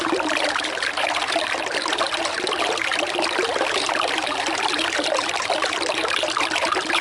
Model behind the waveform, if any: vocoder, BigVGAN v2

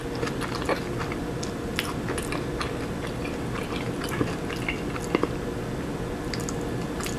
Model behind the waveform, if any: none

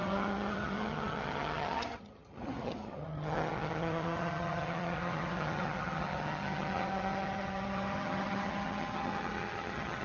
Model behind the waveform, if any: vocoder, HiFi-GAN